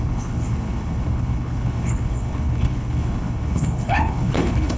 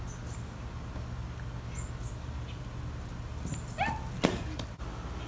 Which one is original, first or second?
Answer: second